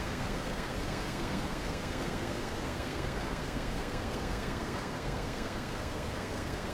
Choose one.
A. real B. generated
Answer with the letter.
B